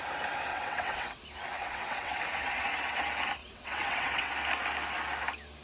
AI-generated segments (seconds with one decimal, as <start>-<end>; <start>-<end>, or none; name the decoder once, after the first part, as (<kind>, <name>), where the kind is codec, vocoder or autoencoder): 0.5-1.2 (vocoder, WaveNeXt); 1.6-2.2; 3.4-4.3